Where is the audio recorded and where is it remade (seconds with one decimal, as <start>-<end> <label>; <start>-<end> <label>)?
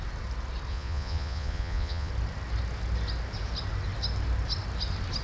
0.0-0.7 recorded; 0.7-2.1 remade; 2.1-5.2 recorded